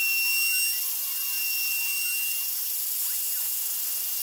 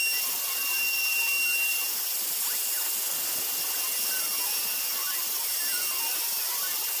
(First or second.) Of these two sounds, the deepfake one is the second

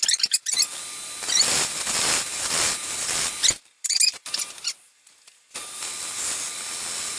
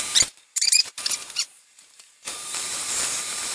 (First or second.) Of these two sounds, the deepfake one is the second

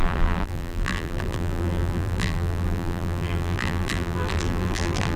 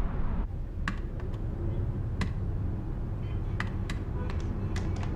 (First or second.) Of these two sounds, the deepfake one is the first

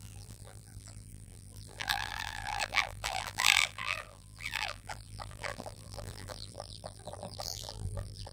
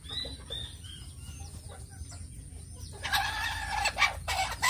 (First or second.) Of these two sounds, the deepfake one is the first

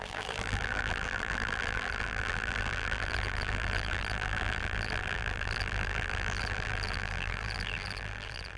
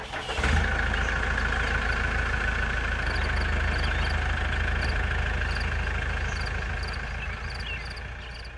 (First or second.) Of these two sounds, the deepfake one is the first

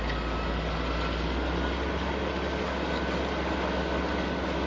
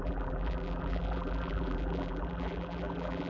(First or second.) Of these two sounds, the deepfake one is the second